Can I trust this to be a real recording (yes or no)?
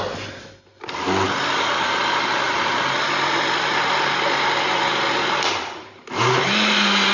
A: yes